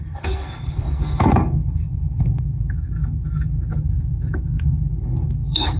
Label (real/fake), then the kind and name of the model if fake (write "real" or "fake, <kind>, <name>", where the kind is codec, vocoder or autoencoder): fake, codec, SNAC